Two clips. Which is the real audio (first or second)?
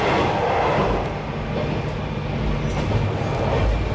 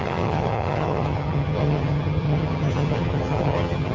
first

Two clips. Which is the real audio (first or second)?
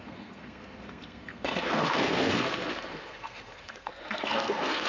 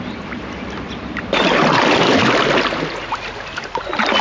second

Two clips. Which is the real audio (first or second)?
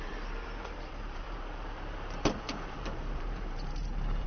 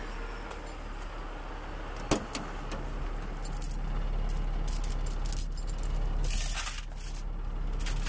second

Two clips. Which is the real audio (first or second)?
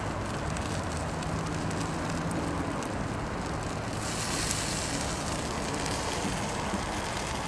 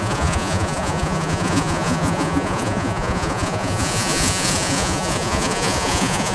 first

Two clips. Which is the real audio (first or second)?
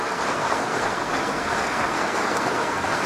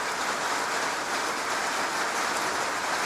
second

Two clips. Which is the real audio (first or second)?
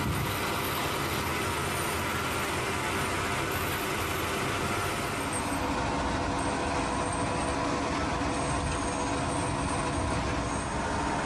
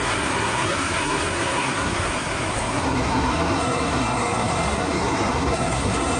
first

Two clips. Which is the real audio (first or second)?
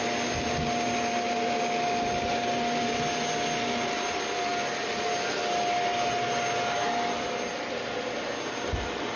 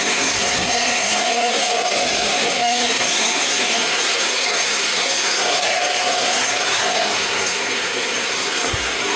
first